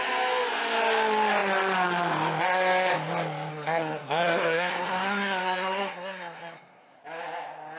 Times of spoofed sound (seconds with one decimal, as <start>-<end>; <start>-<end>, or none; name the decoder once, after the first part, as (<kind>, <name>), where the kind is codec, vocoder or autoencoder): 3.5-7.0 (codec, SNAC)